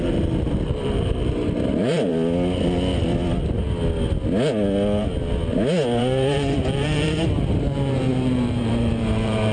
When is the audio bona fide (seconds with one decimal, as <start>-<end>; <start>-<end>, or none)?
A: 2.1-6.0